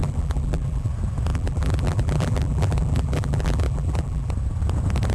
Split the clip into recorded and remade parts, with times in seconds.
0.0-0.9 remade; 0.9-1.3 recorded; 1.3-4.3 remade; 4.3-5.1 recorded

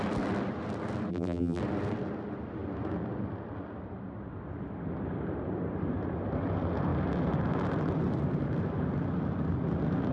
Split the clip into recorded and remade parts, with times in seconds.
0.0-1.1 recorded; 1.1-1.6 remade; 1.6-10.1 recorded

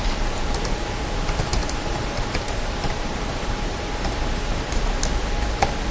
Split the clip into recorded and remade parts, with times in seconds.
0.0-1.5 recorded; 1.5-5.0 remade; 5.0-5.9 recorded

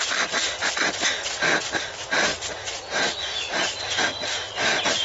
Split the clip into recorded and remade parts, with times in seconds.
0.0-5.0 recorded

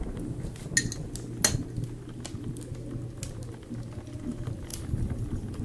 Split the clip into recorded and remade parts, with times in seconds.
0.0-4.7 recorded; 4.7-5.6 remade

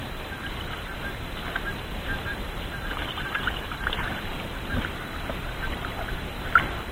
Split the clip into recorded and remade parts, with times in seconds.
0.0-2.3 recorded; 2.3-6.4 remade; 6.4-6.9 recorded

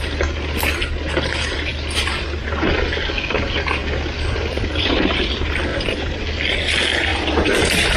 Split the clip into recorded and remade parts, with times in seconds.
0.0-5.7 recorded; 5.7-6.2 remade; 6.2-7.1 recorded; 7.1-8.0 remade